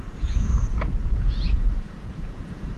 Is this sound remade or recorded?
remade